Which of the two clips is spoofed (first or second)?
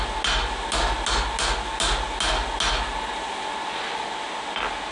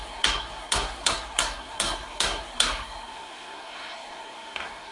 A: second